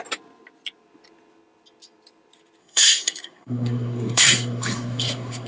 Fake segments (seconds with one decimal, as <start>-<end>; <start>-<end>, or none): 2.6-5.5